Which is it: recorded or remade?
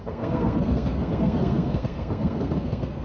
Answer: remade